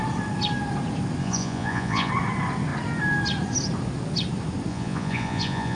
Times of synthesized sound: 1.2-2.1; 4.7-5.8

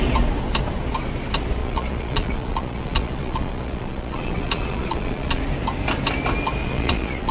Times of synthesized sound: 1.6-5.4; 6.6-7.3

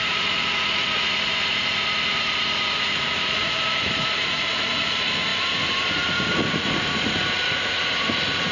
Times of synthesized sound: 0.0-8.5

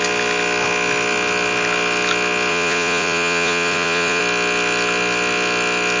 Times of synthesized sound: 2.5-4.2

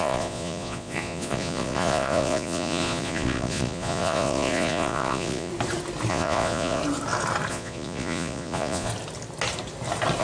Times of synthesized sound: 0.0-5.5; 6.1-6.8; 7.5-8.9